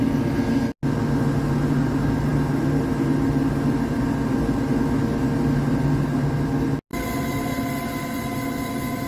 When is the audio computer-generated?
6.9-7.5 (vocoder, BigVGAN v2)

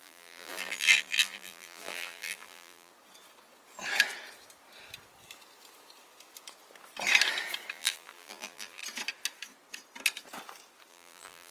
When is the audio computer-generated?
0.0-2.9 (vocoder, BigVGAN v2); 7.7-8.8; 10.9-11.5

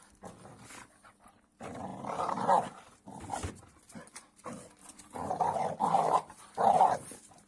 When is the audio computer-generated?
4.8-5.3 (vocoder, BigVGAN v2)

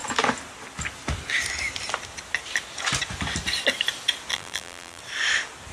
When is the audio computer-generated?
4.3-5.0 (vocoder, BigVGAN v2)

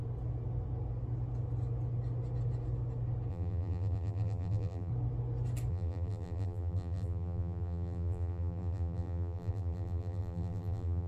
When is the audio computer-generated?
3.3-4.9 (vocoder, BigVGAN v2); 5.7-11.1

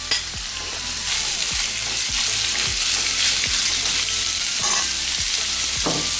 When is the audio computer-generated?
0.0-2.7 (vocoder, BigVGAN v2); 3.8-6.2

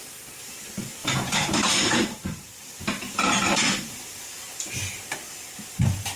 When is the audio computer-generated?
1.0-4.6 (vocoder, BigVGAN v2)

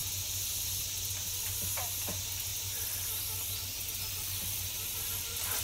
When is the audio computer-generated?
none